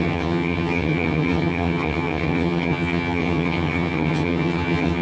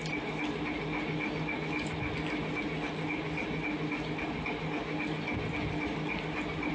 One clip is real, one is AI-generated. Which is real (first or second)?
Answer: second